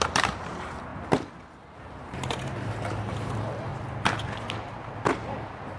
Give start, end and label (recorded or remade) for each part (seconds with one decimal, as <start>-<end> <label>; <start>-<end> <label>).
0.0-0.9 remade; 0.9-1.5 recorded; 1.5-3.7 remade; 3.7-5.8 recorded